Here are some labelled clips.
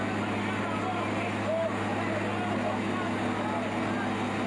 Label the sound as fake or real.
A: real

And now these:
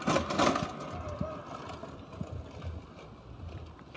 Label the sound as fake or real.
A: real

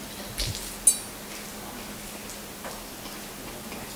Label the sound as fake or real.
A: real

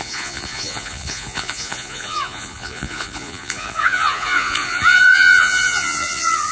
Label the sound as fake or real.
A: fake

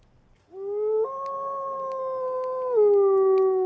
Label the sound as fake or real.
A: real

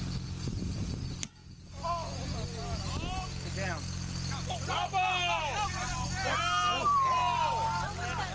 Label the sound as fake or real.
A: real